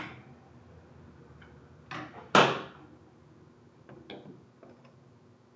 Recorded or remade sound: recorded